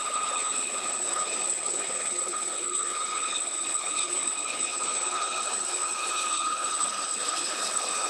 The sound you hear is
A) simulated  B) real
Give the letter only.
A